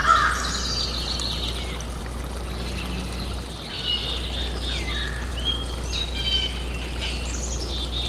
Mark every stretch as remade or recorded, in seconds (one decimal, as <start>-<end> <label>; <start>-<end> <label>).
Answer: 0.0-8.1 recorded